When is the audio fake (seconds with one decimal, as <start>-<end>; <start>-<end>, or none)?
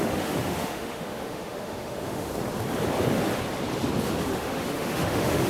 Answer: 0.0-2.3; 4.2-5.5